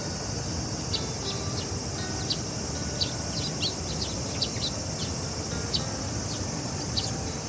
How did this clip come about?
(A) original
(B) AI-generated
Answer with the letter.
A